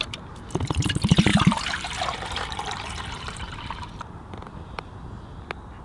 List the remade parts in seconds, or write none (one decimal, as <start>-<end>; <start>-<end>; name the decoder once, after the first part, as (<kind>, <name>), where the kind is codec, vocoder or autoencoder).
1.3-4.8 (vocoder, BigVGAN v2)